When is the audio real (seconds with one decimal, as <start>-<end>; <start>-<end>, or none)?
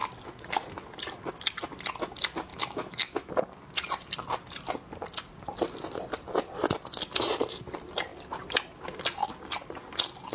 0.0-2.5; 3.3-10.3